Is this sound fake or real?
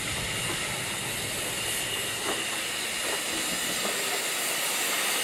real